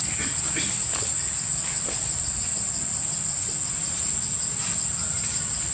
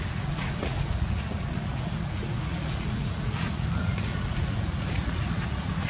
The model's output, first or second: second